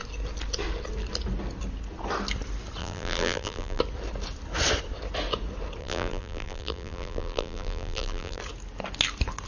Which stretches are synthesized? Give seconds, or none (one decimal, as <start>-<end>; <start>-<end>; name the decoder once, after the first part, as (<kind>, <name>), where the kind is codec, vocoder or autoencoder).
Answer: 2.8-3.8 (vocoder, BigVGAN v2); 5.8-8.4

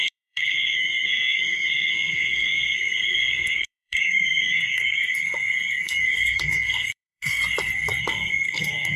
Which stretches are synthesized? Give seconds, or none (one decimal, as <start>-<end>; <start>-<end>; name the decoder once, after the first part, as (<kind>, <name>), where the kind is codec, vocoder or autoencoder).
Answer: 0.0-7.4 (codec, SNAC); 8.0-9.0

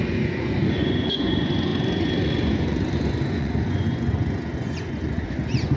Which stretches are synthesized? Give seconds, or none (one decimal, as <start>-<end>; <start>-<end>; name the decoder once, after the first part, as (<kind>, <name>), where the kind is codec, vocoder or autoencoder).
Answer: 0.0-5.8 (vocoder, Vocos)